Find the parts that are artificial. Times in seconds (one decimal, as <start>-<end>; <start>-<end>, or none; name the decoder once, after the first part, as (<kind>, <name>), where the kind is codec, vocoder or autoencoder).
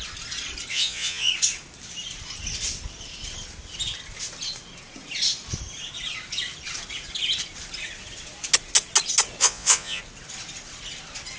0.7-1.3 (vocoder, Vocos); 9.4-10.0